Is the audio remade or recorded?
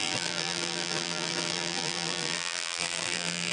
remade